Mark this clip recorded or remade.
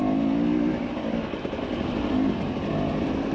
recorded